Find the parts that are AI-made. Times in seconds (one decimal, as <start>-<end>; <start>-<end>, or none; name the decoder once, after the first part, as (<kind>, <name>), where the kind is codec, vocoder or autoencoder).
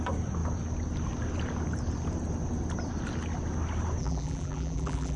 4.0-5.2 (vocoder, BigVGAN v2)